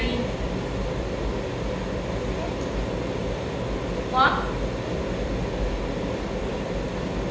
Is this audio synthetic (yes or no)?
no